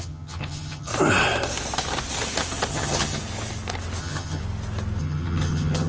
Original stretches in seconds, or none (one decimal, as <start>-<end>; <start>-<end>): 0.9-2.7; 3.2-4.0; 4.4-5.0